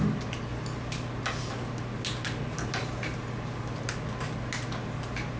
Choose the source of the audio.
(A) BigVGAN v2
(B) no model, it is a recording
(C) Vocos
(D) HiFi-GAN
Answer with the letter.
B